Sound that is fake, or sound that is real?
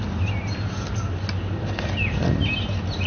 real